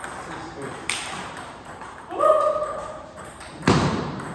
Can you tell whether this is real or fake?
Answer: fake